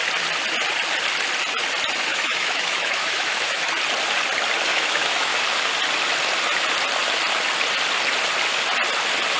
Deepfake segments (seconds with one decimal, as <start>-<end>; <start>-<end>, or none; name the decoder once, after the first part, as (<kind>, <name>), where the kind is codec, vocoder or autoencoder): 2.1-3.7 (autoencoder, DAC-VAE); 4.7-5.4